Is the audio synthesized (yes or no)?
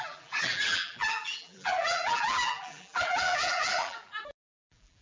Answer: yes